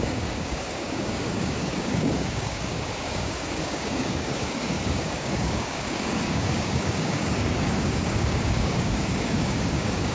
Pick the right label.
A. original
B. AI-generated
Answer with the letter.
B